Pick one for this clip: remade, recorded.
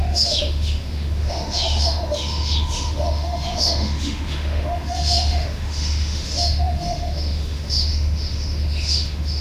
remade